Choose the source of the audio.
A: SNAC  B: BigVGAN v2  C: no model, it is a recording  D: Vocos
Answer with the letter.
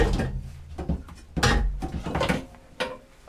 C